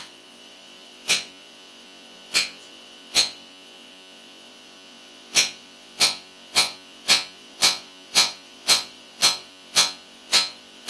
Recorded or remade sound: remade